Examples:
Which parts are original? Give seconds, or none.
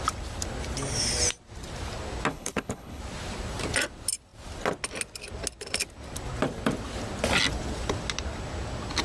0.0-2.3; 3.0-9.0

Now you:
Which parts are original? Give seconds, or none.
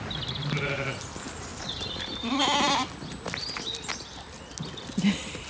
0.0-1.5; 3.8-5.5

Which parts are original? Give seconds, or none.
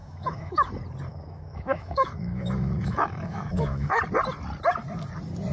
0.7-1.1; 4.0-5.5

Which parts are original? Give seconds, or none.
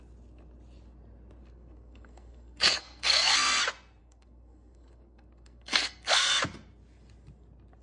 0.0-1.4; 3.6-4.0; 6.3-7.8